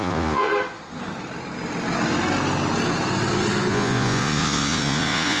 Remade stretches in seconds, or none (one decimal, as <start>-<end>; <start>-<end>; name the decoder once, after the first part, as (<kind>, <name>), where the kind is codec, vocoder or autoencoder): 0.0-0.5 (vocoder, Vocos); 3.7-5.4